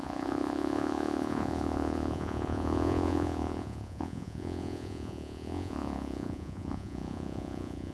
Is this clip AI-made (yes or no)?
yes